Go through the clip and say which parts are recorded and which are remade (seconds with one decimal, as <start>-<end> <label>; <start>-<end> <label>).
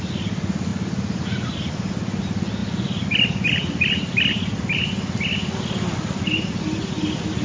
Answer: 0.0-7.4 recorded